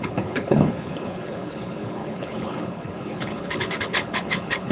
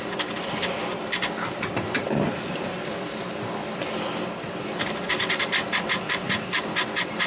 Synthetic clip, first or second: first